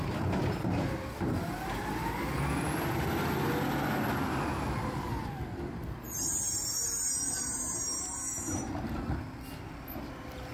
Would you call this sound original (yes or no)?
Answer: yes